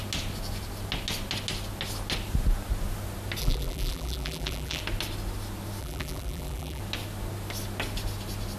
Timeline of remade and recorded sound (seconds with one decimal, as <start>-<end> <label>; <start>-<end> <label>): 0.0-3.4 recorded; 3.4-4.8 remade; 4.8-5.8 recorded; 5.8-6.8 remade; 6.8-8.6 recorded